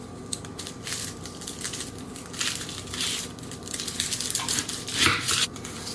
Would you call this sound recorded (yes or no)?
no